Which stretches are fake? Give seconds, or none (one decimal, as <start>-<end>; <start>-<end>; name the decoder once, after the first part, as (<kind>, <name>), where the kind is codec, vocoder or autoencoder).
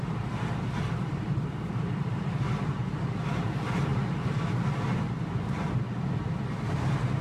0.0-7.2 (vocoder, BigVGAN v2)